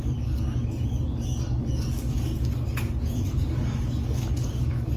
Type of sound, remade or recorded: remade